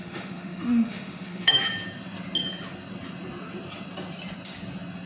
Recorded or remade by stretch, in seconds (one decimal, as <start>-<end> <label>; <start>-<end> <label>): 0.0-1.6 remade; 1.6-5.1 recorded